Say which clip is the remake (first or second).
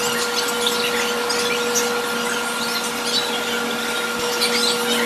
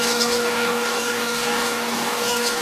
second